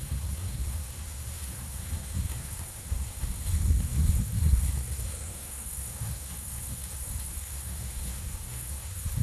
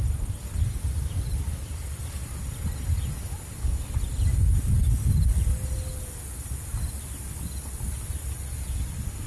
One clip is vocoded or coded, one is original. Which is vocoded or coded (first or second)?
first